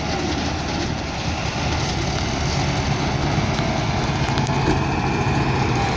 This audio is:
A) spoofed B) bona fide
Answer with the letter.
B